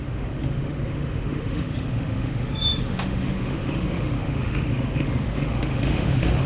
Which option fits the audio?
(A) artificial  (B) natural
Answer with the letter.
A